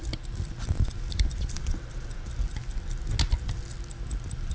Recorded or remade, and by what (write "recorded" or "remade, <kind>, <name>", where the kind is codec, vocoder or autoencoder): recorded